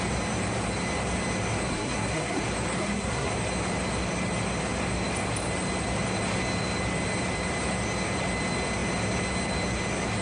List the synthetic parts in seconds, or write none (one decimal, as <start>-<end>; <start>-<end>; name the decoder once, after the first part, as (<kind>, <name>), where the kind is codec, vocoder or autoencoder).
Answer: 1.7-2.4 (codec, SNAC); 2.8-3.3